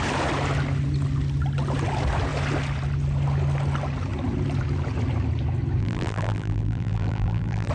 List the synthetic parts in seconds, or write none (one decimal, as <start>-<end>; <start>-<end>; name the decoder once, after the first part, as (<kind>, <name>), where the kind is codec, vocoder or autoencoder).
5.8-7.7 (vocoder, BigVGAN v2)

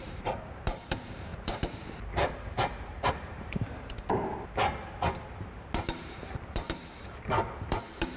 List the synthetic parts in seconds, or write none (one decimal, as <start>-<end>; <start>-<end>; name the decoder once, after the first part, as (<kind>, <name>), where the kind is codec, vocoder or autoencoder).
0.0-4.3 (vocoder, BigVGAN v2); 5.9-8.2